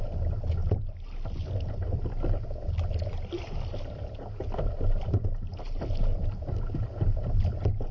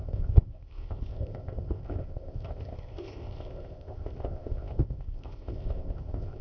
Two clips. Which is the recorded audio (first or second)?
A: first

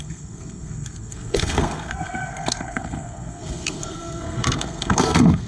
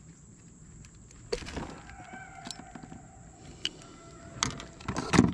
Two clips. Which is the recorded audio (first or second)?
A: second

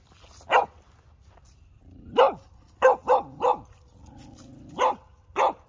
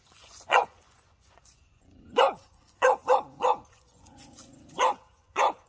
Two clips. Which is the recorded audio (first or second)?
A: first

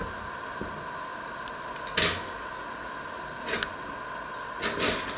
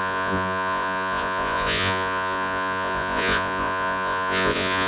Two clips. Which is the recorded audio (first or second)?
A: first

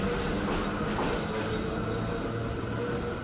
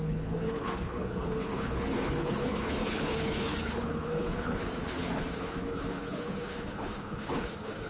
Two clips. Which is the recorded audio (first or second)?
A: first